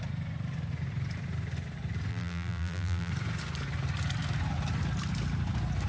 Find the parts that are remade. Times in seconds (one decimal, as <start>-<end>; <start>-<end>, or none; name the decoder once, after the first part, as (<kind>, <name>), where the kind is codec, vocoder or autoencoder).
2.1-3.1 (vocoder, BigVGAN v2)